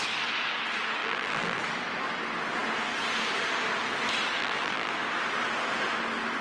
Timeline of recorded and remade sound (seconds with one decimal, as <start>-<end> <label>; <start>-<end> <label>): 0.0-1.0 recorded; 1.0-1.6 remade; 1.6-4.4 recorded; 4.4-4.9 remade; 4.9-6.4 recorded